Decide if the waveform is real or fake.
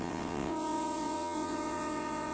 fake